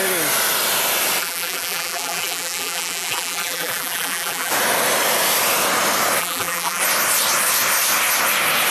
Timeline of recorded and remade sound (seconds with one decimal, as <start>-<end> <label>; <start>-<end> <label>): 0.0-1.2 recorded; 1.2-4.5 remade; 4.5-6.2 recorded; 6.2-6.8 remade; 6.8-8.7 recorded